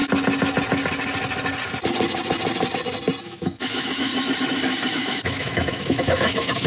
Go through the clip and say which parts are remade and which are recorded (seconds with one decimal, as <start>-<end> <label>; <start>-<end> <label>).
0.0-3.2 recorded; 3.2-4.1 remade; 4.1-4.9 recorded; 4.9-6.7 remade